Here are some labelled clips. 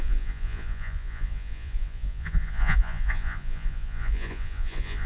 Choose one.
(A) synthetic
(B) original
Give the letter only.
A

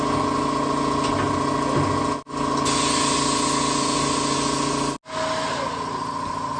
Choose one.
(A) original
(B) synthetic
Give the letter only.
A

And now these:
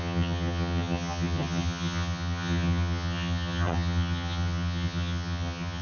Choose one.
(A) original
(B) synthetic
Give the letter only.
B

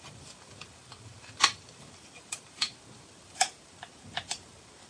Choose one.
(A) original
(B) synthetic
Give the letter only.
B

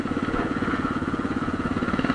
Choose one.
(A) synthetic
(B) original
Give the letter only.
A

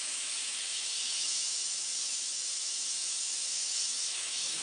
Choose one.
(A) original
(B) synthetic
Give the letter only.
B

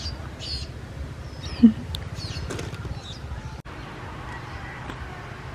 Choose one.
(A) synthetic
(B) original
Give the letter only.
B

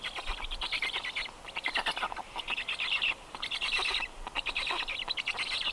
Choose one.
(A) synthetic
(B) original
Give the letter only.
B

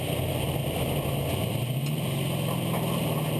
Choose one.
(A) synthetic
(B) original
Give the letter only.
B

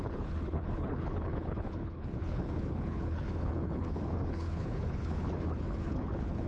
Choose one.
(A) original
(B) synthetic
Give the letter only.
B